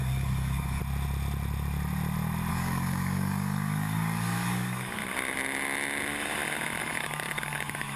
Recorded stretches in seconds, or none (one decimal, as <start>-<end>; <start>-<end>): 0.8-2.5; 5.0-6.8